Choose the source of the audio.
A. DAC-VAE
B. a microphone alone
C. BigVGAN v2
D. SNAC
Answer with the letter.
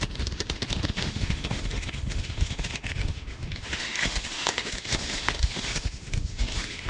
A